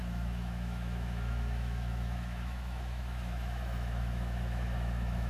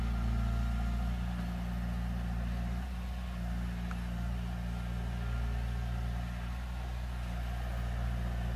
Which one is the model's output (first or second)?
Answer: first